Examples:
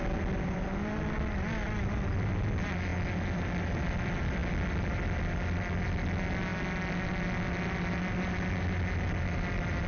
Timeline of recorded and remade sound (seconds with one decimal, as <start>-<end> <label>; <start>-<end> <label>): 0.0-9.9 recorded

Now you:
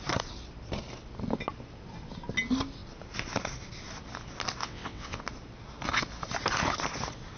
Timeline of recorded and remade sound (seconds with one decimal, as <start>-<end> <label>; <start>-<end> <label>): 0.0-4.6 recorded; 4.6-5.2 remade; 5.2-7.4 recorded

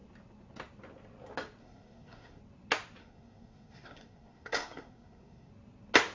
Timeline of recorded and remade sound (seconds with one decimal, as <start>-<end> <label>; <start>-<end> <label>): 0.0-1.6 recorded; 1.6-2.4 remade; 2.4-3.0 recorded; 3.0-5.5 remade; 5.5-6.1 recorded

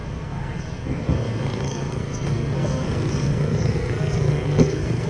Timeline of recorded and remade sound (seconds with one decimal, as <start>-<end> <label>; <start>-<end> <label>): 0.0-5.1 remade

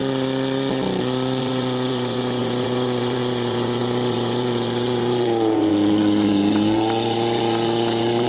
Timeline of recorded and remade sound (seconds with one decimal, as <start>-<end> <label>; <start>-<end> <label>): 0.0-1.4 recorded; 1.4-8.3 remade